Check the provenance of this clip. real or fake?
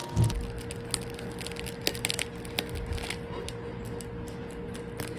real